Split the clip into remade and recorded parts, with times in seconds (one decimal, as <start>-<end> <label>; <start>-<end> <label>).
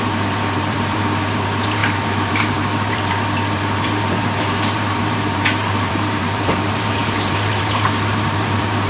0.0-8.9 remade